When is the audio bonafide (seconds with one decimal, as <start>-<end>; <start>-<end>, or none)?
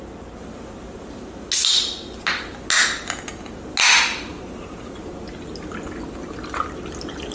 0.0-4.3; 5.1-7.3